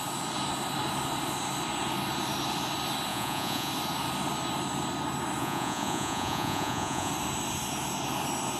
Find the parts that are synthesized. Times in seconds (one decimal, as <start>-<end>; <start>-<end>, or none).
3.1-3.7; 5.4-7.1